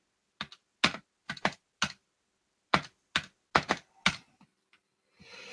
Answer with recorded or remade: recorded